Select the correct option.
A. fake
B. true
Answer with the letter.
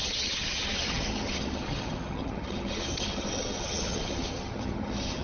A